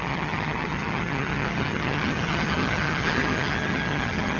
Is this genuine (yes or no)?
no